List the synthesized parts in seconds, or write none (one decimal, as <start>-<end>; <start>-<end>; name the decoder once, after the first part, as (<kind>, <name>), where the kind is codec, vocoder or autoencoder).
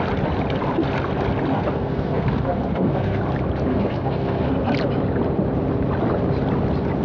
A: 1.5-3.2 (codec, SNAC); 3.7-4.5